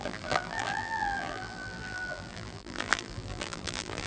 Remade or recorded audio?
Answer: remade